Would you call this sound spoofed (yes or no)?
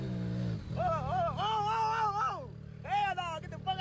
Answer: no